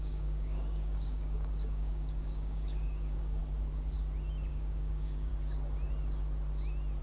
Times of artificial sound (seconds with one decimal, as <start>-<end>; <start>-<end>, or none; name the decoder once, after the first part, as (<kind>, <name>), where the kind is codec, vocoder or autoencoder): 0.0-3.4 (codec, DAC); 4.5-5.3